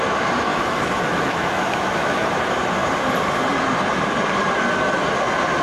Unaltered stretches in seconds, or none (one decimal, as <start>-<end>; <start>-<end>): 0.0-0.5; 2.3-5.6